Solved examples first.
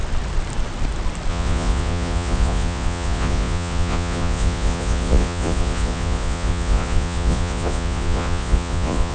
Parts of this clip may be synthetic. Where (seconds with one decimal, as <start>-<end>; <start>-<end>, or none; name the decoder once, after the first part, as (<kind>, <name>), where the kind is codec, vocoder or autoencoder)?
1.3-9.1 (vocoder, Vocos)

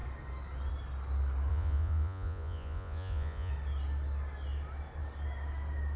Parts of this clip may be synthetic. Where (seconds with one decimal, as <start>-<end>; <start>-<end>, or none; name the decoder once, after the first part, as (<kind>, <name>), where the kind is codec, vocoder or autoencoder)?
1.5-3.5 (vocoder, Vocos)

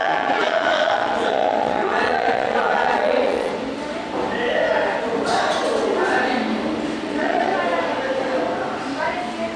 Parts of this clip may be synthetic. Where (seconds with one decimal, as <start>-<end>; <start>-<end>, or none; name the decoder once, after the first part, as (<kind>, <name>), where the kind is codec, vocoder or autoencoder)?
0.0-3.5 (vocoder, Vocos); 7.0-7.5

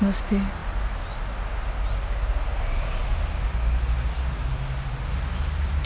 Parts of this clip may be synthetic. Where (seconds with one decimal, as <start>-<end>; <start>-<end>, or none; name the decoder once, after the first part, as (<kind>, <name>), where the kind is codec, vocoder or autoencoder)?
none

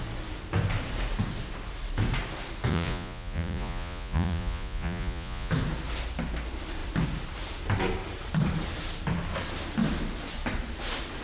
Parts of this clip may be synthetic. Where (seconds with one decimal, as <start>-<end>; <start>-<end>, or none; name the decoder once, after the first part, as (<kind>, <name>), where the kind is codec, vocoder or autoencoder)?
2.7-5.5 (vocoder, Vocos)